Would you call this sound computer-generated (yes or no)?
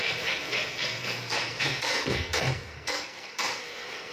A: yes